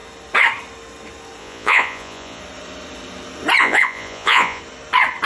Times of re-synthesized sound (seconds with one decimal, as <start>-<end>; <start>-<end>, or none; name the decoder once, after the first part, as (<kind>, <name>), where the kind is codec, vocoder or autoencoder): 1.4-2.4 (vocoder, Vocos); 3.6-4.6